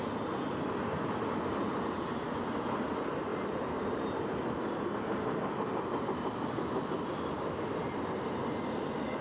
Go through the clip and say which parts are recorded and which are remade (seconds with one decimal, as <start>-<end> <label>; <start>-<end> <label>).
0.0-3.3 recorded; 3.3-4.2 remade; 4.2-9.2 recorded